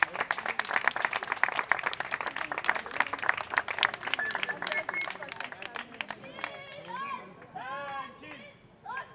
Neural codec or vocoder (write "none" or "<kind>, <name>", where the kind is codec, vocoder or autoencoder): none